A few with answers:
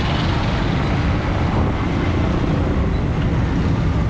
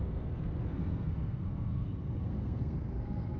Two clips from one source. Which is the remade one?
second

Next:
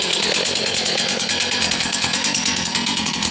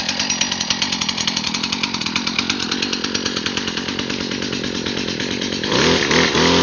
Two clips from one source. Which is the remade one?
first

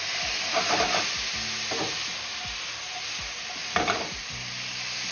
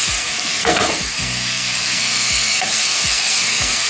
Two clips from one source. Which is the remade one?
second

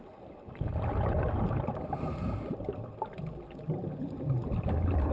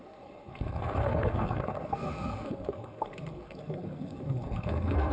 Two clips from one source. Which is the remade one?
second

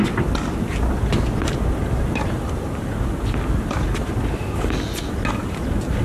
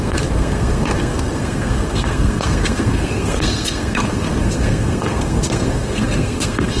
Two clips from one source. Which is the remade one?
second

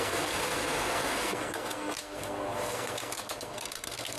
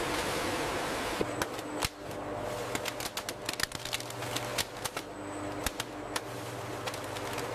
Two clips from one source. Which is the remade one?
first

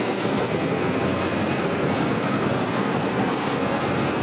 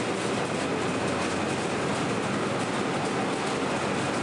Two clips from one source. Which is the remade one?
first